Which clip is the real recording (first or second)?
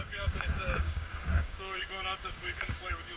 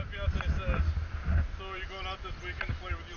second